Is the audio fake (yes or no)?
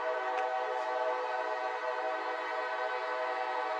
no